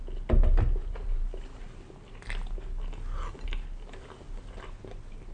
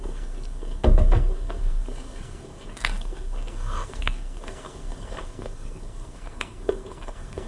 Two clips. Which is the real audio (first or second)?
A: first